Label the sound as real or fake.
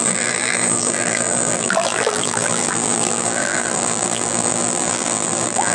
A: fake